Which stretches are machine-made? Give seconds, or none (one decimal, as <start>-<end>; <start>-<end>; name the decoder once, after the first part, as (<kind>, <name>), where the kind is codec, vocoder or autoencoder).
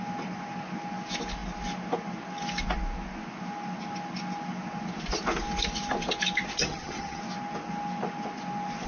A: 6.6-7.2 (vocoder, HiFi-GAN)